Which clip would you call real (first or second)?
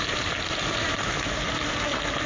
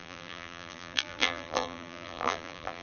first